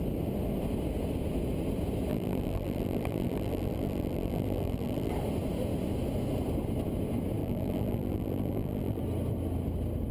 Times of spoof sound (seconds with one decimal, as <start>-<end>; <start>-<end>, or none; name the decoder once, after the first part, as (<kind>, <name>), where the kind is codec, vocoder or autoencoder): 2.1-5.1 (vocoder, BigVGAN v2); 7.4-9.0

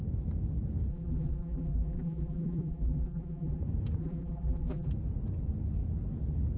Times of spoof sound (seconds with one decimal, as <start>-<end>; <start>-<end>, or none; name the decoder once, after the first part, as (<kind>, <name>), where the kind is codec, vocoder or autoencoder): 0.9-3.6 (vocoder, BigVGAN v2); 4.0-4.9

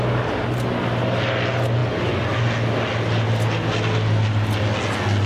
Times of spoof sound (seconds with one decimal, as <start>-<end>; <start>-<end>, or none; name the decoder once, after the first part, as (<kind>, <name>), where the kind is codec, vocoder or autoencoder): none

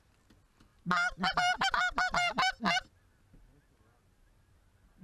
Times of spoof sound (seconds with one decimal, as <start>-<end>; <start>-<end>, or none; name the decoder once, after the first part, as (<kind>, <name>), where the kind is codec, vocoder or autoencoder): none